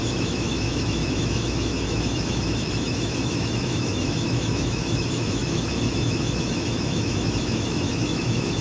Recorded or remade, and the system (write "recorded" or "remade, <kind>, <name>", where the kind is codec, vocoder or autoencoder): remade, autoencoder, DAC-VAE